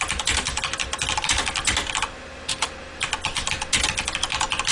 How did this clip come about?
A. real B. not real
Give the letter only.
A